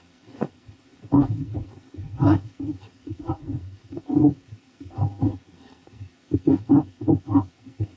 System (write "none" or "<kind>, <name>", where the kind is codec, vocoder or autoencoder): codec, SNAC